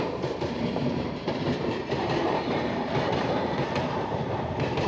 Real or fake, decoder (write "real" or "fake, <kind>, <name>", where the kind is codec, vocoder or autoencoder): fake, vocoder, BigVGAN v2